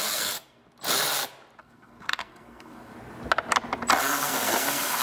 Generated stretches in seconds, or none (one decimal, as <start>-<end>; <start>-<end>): 0.0-0.6; 1.6-2.9; 4.0-5.0